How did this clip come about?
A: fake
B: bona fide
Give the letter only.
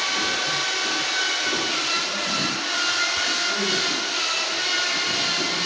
B